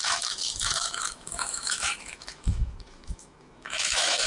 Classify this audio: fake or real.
fake